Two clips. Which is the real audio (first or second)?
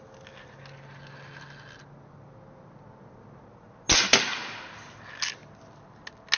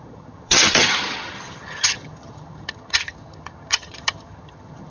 first